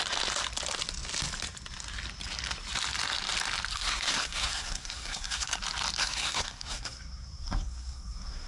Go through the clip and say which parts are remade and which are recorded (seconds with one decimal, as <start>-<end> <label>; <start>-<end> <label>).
0.0-3.7 recorded; 3.7-5.6 remade; 5.6-6.0 recorded; 6.0-8.5 remade